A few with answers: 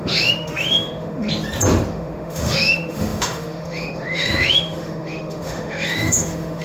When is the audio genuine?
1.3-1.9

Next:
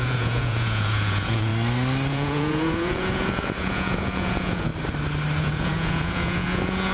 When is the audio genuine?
1.5-2.1; 4.7-5.4

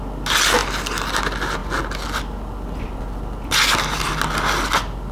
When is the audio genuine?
0.0-5.1